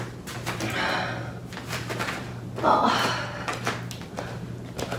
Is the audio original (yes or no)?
yes